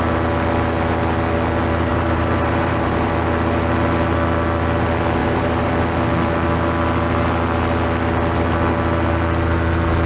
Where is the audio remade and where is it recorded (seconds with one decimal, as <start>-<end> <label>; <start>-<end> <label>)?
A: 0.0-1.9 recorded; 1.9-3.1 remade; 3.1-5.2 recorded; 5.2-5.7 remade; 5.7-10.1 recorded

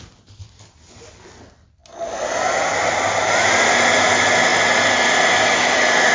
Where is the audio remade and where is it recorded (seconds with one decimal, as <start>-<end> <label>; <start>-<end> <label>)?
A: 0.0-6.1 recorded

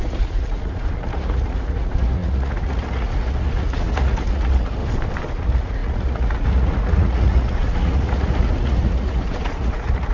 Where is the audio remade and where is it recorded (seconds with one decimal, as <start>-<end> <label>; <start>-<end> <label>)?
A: 0.0-4.8 remade; 4.8-5.3 recorded; 5.3-10.1 remade